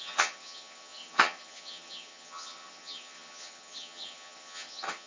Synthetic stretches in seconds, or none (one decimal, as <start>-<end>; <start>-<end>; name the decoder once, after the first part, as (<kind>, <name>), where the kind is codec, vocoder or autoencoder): 0.0-5.1 (vocoder, HiFi-GAN)